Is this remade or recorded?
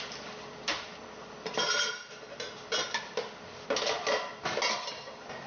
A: recorded